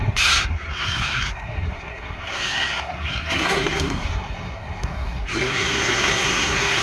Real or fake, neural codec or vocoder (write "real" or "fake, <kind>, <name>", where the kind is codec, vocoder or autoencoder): fake, codec, SNAC